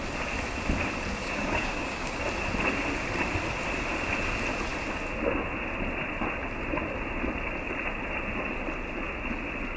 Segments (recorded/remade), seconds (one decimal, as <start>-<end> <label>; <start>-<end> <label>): 0.0-1.2 recorded; 1.2-2.2 remade; 2.2-9.8 recorded